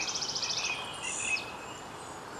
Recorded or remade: remade